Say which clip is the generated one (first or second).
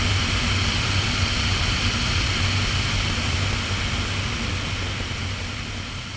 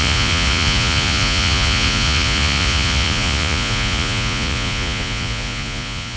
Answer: second